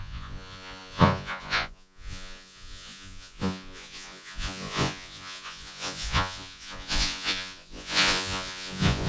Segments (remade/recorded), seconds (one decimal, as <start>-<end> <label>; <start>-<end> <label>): 0.0-9.1 remade